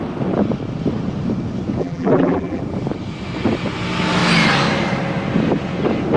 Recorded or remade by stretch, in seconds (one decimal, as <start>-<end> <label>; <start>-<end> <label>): 0.0-1.8 recorded; 1.8-2.6 remade; 2.6-6.2 recorded